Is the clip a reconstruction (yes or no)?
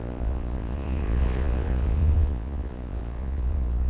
yes